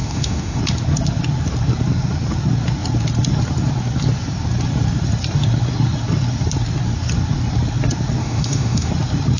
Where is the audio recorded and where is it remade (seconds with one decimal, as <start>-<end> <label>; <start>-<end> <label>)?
0.0-0.6 remade; 0.6-8.2 recorded; 8.2-8.9 remade; 8.9-9.4 recorded